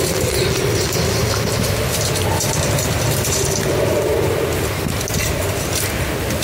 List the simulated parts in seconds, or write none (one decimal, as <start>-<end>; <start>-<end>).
none